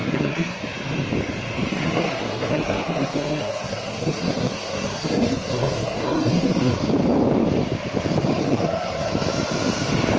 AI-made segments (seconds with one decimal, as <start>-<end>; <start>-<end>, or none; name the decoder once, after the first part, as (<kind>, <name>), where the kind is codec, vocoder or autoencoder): 0.0-0.6 (codec, SNAC); 1.7-6.8; 8.4-9.1